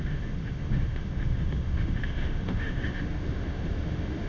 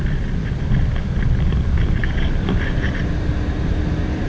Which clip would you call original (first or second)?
second